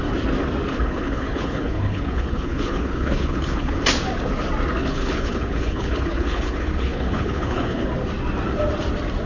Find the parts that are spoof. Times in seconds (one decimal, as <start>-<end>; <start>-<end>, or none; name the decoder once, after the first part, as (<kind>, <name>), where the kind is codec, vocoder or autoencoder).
0.7-3.8 (codec, HILCodec); 4.8-7.9